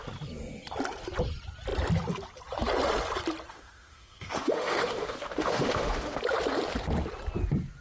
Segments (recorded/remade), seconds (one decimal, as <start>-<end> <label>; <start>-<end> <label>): 0.0-3.5 recorded; 3.5-6.2 remade; 6.2-7.8 recorded